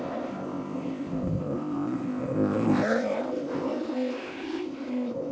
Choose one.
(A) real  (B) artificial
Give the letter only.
B